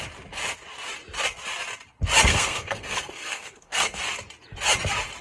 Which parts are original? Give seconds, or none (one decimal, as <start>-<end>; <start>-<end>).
0.0-2.3; 4.0-5.2